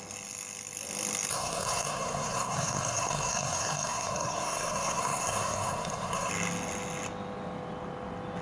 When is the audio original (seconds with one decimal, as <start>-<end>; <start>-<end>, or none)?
0.0-1.3; 6.3-8.4